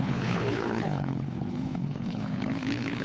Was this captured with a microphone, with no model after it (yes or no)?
no